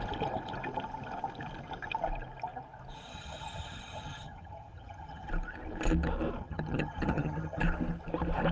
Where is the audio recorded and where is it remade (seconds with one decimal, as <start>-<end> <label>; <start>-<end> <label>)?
0.0-3.1 recorded; 3.1-5.3 remade; 5.3-6.4 recorded; 6.4-7.6 remade; 7.6-8.5 recorded